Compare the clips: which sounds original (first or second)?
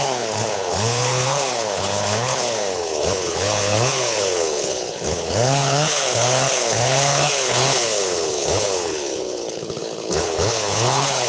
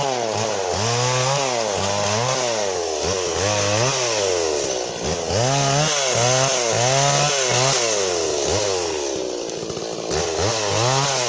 second